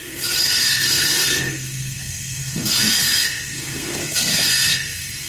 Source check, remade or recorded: remade